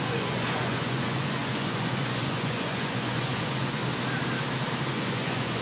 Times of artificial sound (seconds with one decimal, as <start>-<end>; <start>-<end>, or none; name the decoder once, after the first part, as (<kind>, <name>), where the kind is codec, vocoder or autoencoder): 0.0-3.8 (vocoder, Vocos); 4.9-5.6